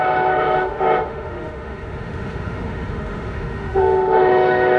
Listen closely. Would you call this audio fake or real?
fake